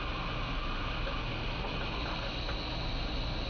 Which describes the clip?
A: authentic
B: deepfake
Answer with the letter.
A